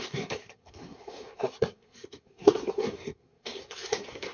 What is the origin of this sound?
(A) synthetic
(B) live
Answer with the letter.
A